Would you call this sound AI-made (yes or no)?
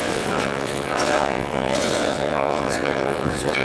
yes